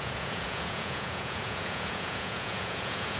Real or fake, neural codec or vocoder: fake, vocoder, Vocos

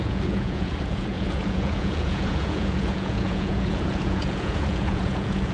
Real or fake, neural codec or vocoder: fake, vocoder, Vocos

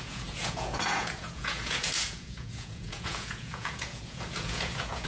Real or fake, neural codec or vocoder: fake, vocoder, Vocos